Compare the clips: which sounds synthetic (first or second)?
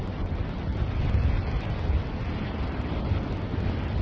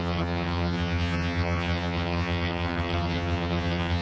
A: second